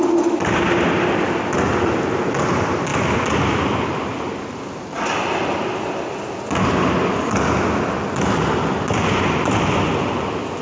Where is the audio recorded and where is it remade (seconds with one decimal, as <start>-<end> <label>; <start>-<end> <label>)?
0.0-10.6 recorded